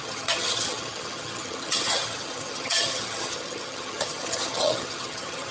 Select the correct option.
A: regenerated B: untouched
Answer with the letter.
A